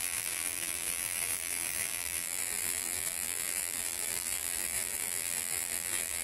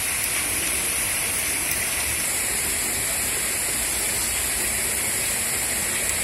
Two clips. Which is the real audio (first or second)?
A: second